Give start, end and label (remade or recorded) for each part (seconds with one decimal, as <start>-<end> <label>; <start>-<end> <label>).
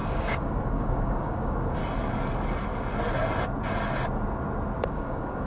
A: 0.0-1.8 remade; 1.8-4.9 recorded; 4.9-5.5 remade